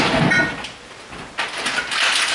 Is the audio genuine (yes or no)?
yes